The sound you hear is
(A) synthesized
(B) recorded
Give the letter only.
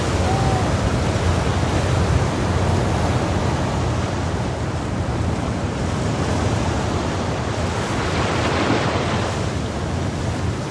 B